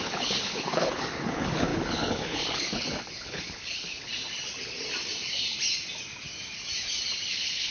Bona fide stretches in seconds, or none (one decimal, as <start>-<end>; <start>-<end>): 4.1-7.3